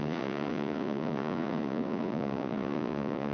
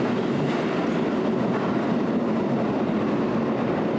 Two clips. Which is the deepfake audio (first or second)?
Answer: first